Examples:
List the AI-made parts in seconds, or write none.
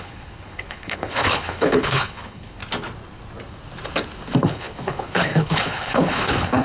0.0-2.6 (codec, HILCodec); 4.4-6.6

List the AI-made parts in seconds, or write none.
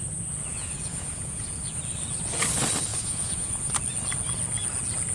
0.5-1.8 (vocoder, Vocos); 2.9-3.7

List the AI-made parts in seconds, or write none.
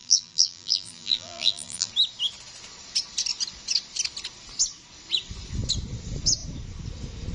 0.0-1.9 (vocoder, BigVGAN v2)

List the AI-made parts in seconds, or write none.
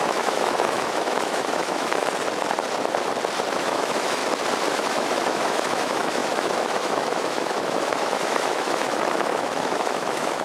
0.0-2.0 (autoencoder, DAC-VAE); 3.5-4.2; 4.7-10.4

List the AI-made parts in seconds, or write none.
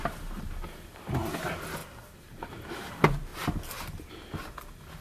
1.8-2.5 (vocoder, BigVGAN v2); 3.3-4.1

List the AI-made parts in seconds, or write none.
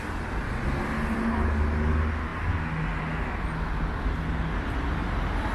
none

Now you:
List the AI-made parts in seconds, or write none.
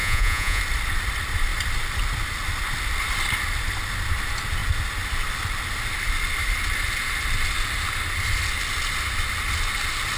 0.0-0.6 (vocoder, Vocos)